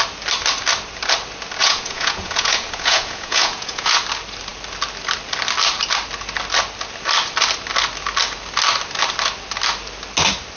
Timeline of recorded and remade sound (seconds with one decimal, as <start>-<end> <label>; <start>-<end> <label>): 0.0-1.6 recorded; 1.6-3.9 remade; 3.9-10.6 recorded